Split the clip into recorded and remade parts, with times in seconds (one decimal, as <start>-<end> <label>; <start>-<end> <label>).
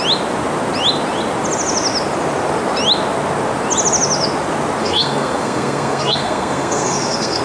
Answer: 0.0-4.8 recorded; 4.8-7.4 remade